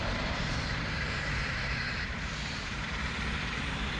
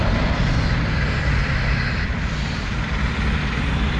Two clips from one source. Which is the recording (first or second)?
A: second